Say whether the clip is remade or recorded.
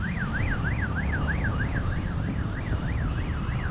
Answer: remade